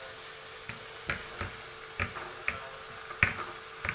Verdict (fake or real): real